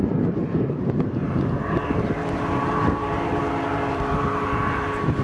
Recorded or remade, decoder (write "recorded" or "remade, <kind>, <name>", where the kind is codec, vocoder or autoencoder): remade, vocoder, BigVGAN v2